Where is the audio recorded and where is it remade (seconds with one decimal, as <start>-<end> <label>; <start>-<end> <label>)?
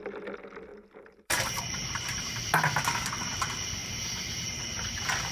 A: 0.0-0.7 recorded; 0.7-2.4 remade; 2.4-3.8 recorded; 3.8-4.6 remade; 4.6-5.3 recorded